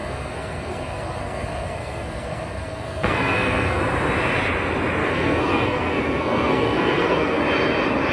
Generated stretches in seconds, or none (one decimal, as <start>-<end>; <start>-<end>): 0.0-3.8; 5.0-7.4